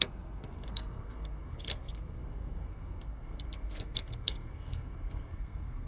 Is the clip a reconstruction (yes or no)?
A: yes